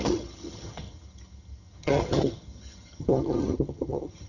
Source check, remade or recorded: remade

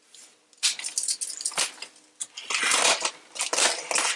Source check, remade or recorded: recorded